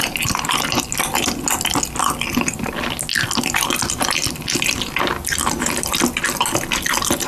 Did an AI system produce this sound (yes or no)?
no